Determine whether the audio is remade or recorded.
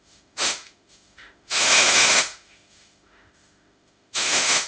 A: remade